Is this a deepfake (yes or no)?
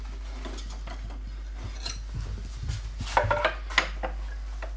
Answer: no